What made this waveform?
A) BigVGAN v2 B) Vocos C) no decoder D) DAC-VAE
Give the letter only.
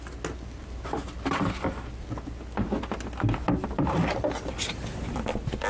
C